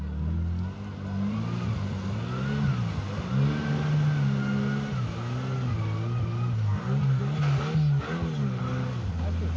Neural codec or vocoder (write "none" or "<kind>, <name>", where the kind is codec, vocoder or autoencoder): none